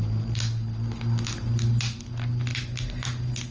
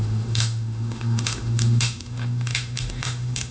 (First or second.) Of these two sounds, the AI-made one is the second